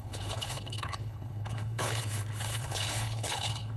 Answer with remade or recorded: remade